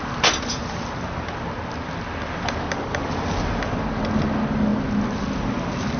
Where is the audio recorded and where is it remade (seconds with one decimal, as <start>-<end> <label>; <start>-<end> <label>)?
0.0-6.0 recorded